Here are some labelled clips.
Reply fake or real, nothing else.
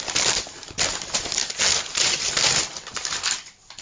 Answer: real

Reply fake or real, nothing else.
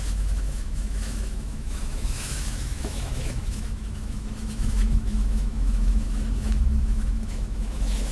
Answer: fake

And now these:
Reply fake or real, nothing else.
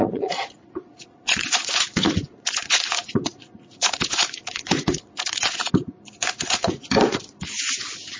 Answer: fake